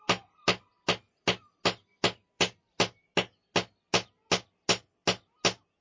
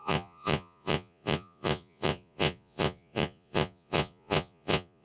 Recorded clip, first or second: first